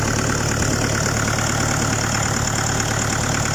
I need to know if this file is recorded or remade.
recorded